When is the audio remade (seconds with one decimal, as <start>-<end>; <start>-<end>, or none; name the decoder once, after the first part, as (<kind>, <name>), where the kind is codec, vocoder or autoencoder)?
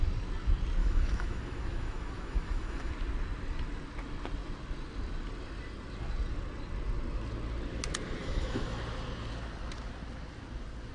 0.8-2.9 (autoencoder, DAC-VAE); 8.2-8.8